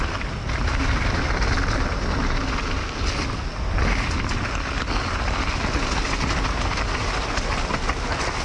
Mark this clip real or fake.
real